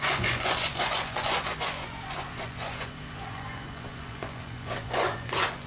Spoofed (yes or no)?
yes